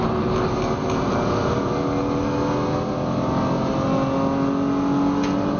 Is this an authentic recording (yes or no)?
yes